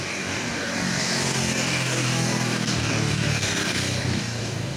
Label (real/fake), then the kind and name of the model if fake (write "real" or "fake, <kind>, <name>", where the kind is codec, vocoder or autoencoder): fake, codec, DAC